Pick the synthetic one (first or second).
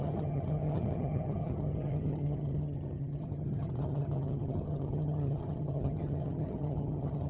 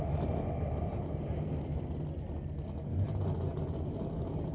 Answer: first